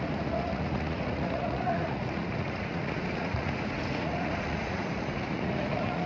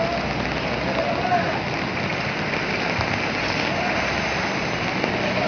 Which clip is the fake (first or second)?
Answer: first